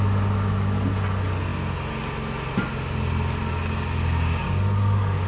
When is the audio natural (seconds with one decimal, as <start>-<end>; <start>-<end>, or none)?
0.0-4.4

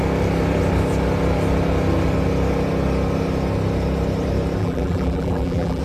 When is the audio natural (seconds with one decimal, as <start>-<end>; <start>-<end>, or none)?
0.0-4.6

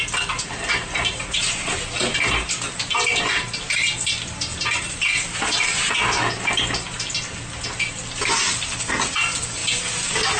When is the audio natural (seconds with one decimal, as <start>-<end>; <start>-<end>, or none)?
0.0-10.4

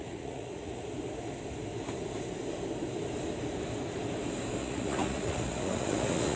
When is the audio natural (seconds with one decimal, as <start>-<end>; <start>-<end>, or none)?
0.8-4.6

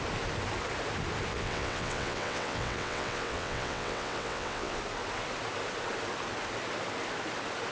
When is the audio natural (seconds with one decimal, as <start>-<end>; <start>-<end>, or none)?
0.0-1.3; 4.8-7.7

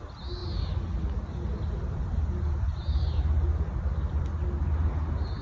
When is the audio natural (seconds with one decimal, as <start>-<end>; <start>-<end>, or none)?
0.0-5.4

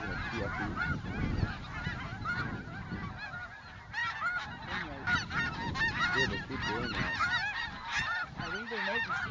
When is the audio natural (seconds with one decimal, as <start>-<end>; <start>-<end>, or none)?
0.0-9.3

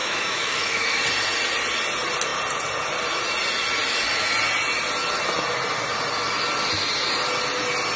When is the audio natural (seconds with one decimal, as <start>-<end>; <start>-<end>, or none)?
1.0-8.0